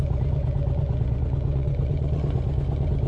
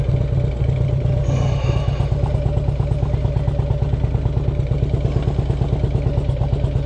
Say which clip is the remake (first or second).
first